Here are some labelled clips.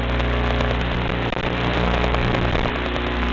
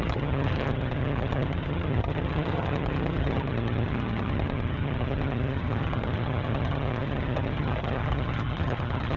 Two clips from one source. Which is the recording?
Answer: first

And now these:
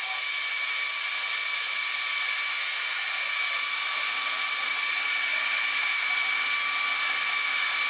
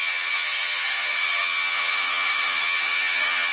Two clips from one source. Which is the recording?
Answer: first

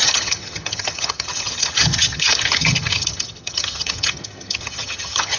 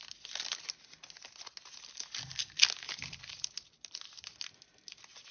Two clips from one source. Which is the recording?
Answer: second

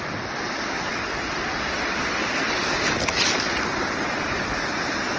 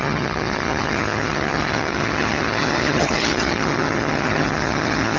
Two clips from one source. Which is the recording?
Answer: first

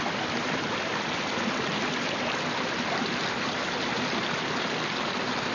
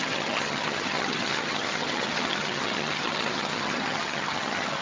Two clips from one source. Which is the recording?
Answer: first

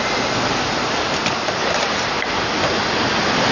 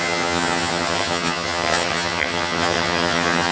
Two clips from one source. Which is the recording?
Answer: first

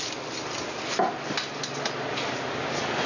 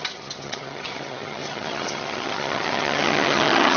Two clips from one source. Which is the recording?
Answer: first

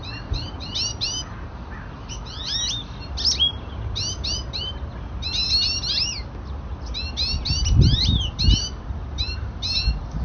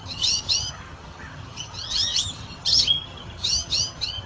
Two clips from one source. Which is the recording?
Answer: first